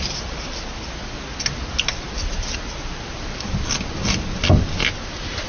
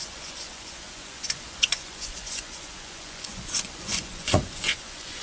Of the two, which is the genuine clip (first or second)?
first